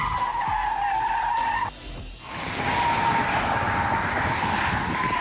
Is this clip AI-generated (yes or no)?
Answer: no